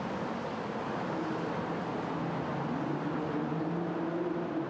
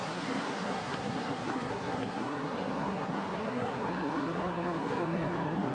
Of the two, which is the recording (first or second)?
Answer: first